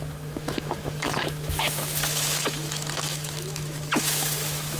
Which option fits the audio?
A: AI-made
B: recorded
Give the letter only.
A